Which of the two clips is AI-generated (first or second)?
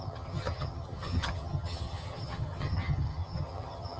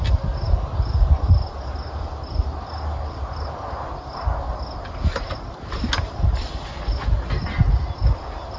first